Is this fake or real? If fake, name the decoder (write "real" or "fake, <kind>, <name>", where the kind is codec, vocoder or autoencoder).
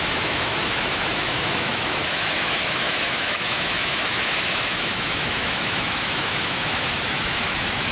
fake, autoencoder, DAC-VAE